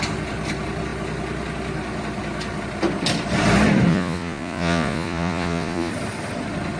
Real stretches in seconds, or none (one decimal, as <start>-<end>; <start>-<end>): 0.0-3.9; 5.9-6.8